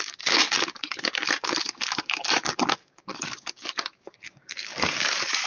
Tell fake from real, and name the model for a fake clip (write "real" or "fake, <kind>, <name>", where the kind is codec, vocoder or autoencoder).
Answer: fake, codec, DAC